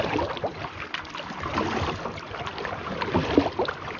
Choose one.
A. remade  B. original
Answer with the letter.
B